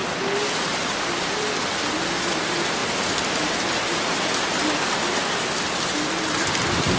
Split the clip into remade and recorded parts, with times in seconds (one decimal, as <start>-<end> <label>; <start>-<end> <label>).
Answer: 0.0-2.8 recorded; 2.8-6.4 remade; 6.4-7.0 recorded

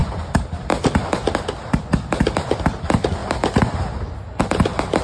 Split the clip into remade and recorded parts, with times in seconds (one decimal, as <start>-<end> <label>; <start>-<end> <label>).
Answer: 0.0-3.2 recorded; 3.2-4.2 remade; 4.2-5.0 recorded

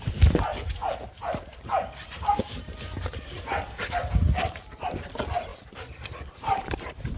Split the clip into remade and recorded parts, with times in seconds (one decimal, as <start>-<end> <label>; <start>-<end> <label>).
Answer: 0.0-0.5 recorded; 0.5-3.2 remade; 3.2-7.2 recorded

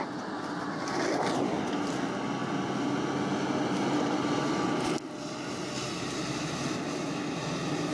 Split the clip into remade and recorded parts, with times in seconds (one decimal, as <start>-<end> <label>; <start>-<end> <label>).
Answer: 0.0-7.9 recorded

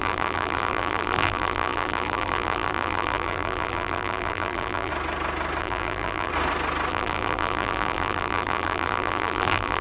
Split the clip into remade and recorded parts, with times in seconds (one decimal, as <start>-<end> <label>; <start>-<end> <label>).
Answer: 0.0-4.9 remade; 4.9-5.6 recorded; 5.6-6.3 remade; 6.3-6.9 recorded; 6.9-9.8 remade

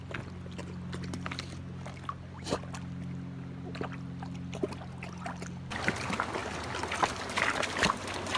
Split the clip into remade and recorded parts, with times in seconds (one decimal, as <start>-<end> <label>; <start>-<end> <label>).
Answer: 0.0-8.4 recorded